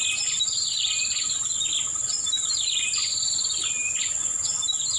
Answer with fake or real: real